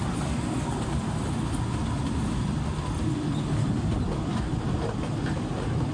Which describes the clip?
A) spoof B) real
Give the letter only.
B